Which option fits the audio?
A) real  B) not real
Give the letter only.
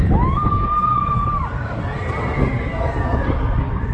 B